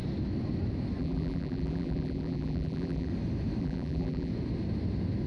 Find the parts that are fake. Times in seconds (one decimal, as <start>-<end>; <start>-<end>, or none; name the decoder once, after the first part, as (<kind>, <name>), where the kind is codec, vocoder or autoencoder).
1.0-3.1 (vocoder, BigVGAN v2); 3.6-4.3